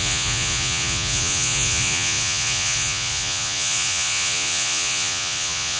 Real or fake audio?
fake